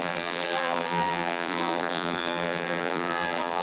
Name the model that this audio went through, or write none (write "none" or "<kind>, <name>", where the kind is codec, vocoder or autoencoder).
vocoder, BigVGAN v2